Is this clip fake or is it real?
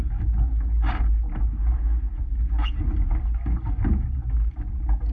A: real